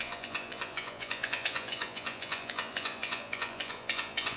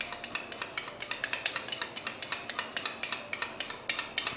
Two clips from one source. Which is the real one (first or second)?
second